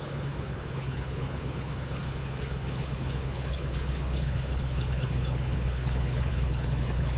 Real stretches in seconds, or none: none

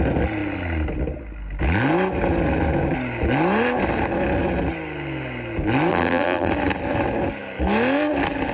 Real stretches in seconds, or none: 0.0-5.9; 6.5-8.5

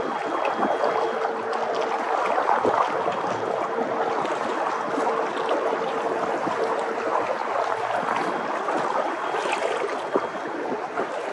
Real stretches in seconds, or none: 0.0-11.3

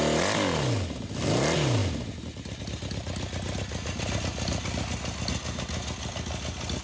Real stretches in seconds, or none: 0.0-6.8

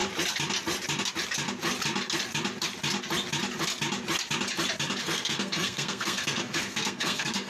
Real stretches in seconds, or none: 0.0-5.0

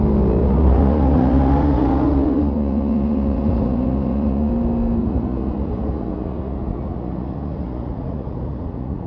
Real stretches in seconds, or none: 0.0-0.4; 4.5-5.0

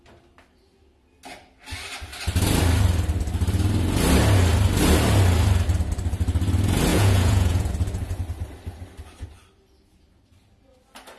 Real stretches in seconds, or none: 0.0-6.9; 7.7-11.2

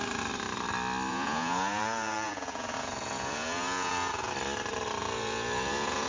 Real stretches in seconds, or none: 0.0-1.1; 4.3-5.0